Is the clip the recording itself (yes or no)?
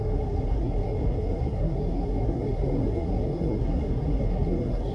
no